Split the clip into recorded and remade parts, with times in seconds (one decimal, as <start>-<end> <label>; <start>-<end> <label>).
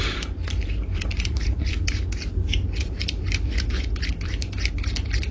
0.0-3.2 remade; 3.2-5.3 recorded